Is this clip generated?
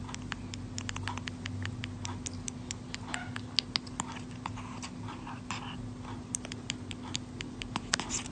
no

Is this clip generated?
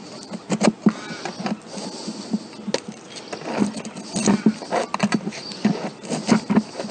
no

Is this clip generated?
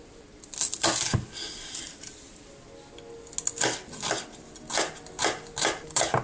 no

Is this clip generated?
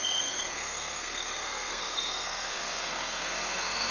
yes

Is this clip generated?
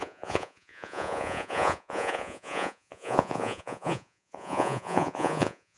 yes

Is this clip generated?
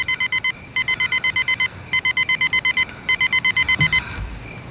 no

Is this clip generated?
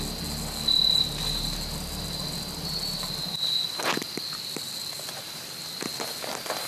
no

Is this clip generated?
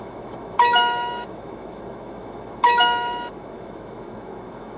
yes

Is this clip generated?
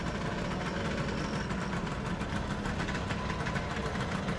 no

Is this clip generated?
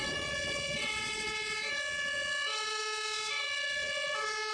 yes